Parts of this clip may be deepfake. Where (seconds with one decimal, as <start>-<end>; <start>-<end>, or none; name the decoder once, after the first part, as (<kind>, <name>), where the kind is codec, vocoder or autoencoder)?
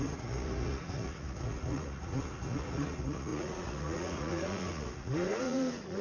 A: 0.0-6.0 (vocoder, Vocos)